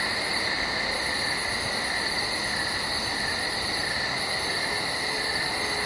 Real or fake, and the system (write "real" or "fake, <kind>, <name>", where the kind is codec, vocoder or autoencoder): real